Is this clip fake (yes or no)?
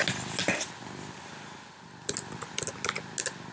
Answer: no